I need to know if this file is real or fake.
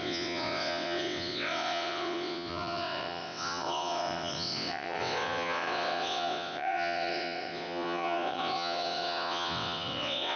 fake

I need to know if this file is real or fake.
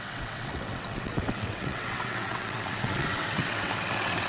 fake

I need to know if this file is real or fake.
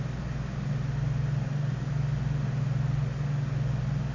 real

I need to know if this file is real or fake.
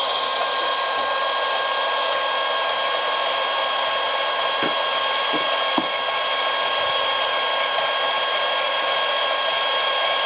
real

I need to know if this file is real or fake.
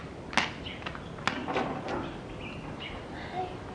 real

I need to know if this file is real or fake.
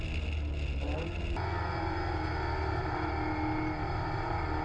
real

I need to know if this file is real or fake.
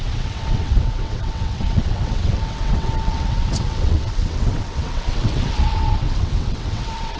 fake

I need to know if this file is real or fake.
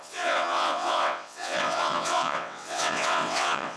fake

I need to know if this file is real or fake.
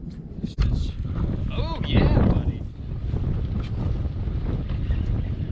real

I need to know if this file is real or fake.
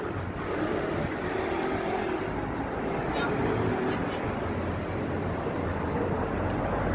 real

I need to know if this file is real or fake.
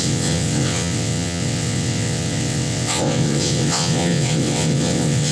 fake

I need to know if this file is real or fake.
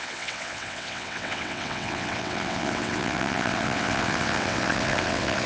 fake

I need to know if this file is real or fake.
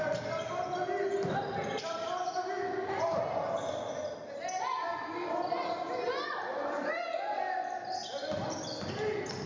real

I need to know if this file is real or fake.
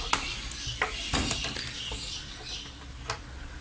real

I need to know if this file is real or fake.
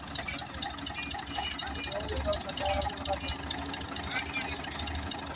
real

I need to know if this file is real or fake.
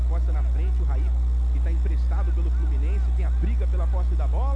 real